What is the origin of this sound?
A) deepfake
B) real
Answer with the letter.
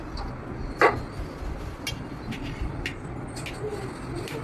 B